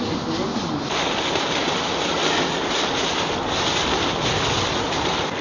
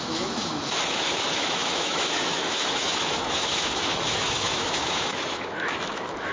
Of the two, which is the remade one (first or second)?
second